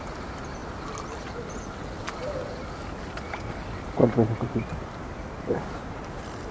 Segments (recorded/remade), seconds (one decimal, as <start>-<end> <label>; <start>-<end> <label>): 0.0-6.5 recorded